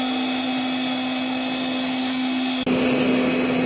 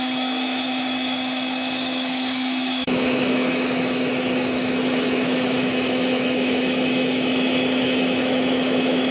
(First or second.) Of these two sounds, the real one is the first